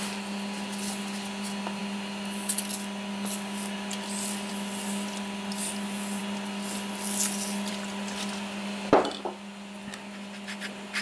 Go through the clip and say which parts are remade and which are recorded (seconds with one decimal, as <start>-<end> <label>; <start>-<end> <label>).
0.0-11.0 recorded